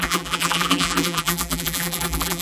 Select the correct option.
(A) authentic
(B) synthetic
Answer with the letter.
B